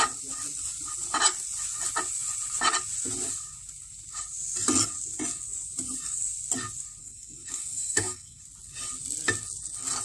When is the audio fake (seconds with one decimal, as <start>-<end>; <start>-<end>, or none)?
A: 7.0-8.4